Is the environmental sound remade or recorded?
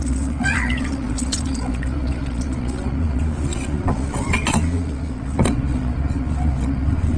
remade